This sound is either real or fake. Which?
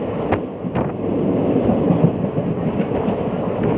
real